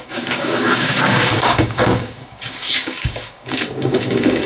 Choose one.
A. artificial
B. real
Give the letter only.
A